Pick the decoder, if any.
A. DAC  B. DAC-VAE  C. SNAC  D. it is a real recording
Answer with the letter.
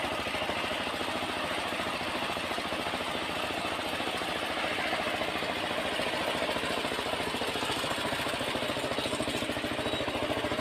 D